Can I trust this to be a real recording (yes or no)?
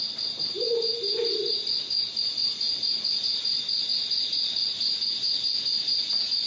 yes